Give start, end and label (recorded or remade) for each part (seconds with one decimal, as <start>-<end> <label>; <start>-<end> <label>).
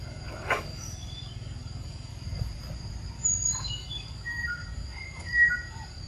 0.0-2.1 remade; 2.1-3.6 recorded; 3.6-6.1 remade